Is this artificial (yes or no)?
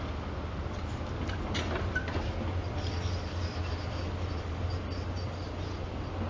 no